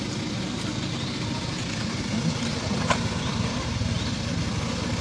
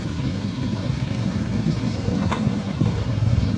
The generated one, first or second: second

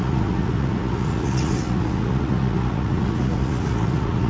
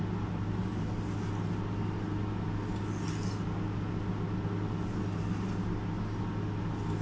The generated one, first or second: first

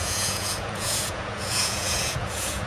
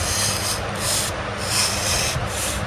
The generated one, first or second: first